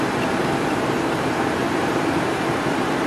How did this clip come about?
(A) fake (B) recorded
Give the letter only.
A